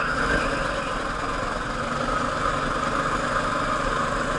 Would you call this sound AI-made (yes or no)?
no